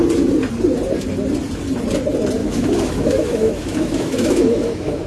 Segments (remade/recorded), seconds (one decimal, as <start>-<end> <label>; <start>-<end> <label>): 0.0-2.4 recorded; 2.4-5.1 remade